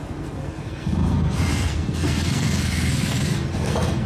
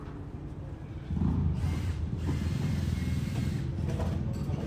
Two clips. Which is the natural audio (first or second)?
second